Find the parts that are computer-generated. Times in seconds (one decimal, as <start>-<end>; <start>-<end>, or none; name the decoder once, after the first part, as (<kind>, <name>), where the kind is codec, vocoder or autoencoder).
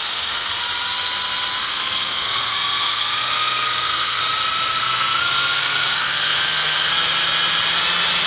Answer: 0.0-0.6 (codec, SNAC); 1.6-4.2; 4.8-6.9